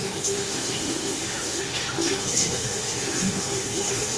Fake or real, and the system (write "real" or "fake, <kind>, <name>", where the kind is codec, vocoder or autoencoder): fake, autoencoder, DAC-VAE